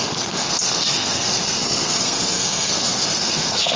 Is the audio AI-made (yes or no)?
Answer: yes